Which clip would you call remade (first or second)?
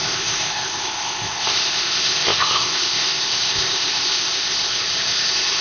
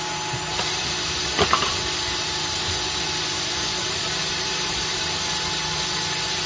first